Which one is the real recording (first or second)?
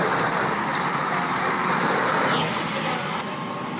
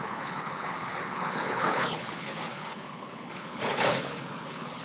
first